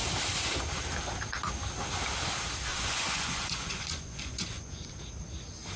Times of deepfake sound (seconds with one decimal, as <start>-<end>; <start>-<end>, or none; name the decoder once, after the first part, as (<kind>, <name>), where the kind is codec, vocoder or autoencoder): 2.7-4.9 (vocoder, Vocos)